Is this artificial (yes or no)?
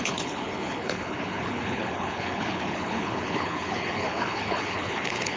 yes